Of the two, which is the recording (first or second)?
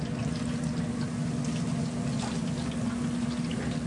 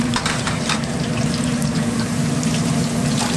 first